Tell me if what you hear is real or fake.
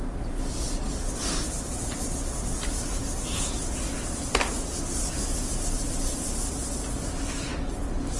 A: real